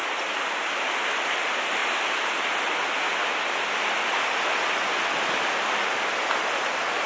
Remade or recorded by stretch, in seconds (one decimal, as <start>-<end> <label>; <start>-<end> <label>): 0.0-7.1 recorded